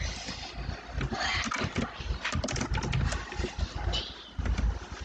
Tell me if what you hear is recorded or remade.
recorded